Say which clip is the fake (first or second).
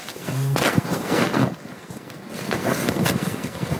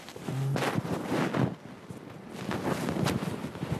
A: first